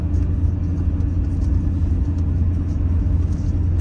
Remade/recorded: recorded